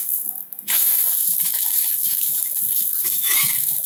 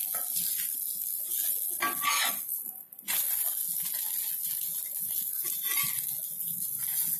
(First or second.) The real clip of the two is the second